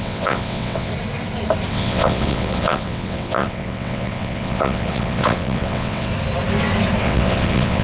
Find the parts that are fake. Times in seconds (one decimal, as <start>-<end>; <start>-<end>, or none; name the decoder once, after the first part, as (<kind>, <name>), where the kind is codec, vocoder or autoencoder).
0.0-0.9 (vocoder, WaveNeXt); 1.7-6.1; 7.0-7.8